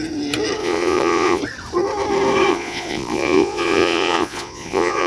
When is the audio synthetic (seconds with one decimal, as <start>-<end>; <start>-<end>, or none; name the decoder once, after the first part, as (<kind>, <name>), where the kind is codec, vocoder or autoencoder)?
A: 0.6-1.4 (vocoder, Vocos); 2.5-5.1